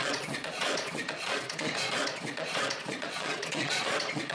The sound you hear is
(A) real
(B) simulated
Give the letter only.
B